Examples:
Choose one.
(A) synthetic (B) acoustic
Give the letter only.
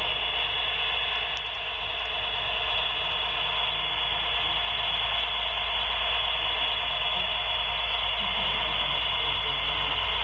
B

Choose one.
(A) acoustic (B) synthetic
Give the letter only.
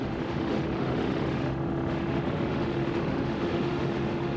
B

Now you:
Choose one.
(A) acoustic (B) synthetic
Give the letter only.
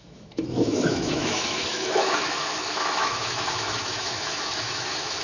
B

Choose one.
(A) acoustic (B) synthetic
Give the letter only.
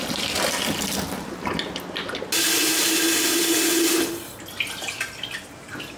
A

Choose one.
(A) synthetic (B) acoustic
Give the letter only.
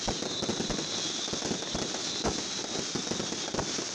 B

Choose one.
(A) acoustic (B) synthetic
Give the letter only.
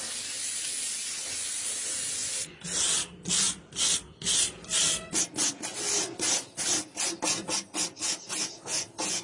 A